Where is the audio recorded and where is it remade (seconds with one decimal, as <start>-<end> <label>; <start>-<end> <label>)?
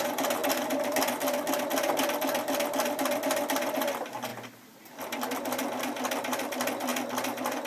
0.0-7.7 recorded